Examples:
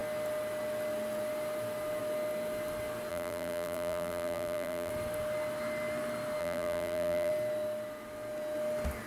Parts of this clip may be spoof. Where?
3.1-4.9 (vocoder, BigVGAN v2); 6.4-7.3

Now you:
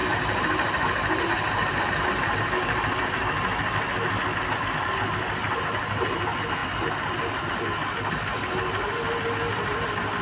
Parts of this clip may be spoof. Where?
none